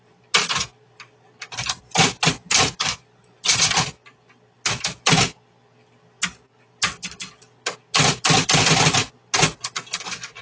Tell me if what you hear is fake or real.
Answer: real